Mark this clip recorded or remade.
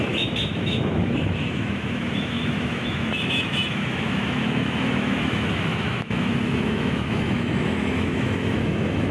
remade